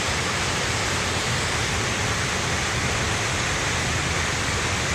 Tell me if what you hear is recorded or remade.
recorded